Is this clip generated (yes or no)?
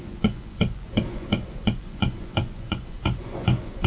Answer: yes